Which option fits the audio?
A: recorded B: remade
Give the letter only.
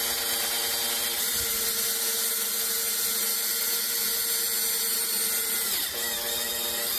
A